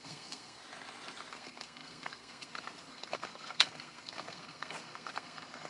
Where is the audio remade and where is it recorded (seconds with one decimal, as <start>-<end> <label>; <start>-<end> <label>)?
0.0-0.6 remade; 0.6-1.3 recorded; 1.3-5.7 remade